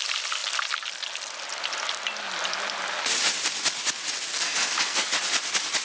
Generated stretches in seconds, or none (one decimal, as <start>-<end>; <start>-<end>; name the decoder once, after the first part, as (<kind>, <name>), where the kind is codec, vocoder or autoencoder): 4.3-5.1 (codec, SNAC)